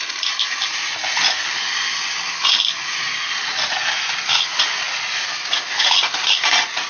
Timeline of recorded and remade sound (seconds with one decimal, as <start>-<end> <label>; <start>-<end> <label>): 0.0-5.3 recorded; 5.3-6.0 remade; 6.0-6.9 recorded